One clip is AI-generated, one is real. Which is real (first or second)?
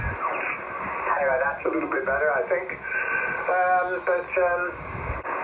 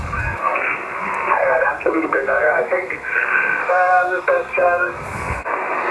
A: first